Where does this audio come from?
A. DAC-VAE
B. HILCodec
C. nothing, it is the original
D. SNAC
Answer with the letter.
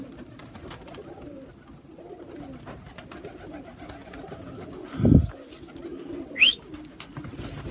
C